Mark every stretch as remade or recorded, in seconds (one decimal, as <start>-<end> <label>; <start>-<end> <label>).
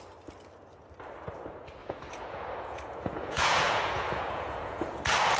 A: 0.0-1.8 recorded; 1.8-5.0 remade; 5.0-5.4 recorded